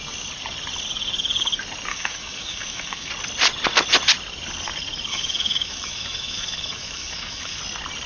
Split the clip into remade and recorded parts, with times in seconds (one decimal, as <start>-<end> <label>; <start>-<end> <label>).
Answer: 0.0-1.9 recorded; 1.9-3.1 remade; 3.1-5.1 recorded; 5.1-7.6 remade; 7.6-8.1 recorded